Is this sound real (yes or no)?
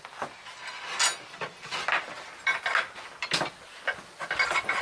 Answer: yes